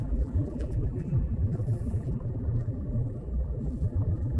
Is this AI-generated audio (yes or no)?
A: yes